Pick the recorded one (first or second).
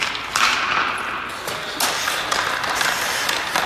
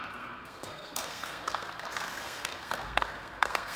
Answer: first